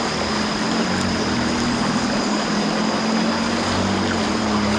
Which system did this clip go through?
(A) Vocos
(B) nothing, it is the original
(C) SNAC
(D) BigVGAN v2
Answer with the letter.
B